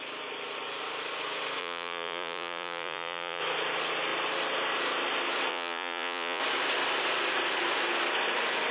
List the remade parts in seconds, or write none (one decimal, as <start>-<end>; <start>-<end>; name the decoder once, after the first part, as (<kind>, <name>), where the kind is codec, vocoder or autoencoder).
1.6-3.4 (vocoder, Vocos); 5.5-6.4